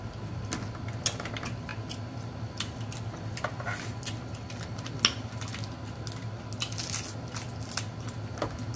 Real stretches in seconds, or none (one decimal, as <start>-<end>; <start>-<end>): 0.0-8.8